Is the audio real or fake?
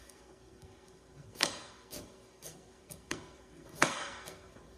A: fake